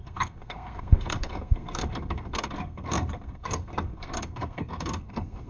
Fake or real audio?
fake